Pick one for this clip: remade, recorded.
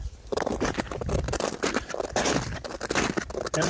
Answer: remade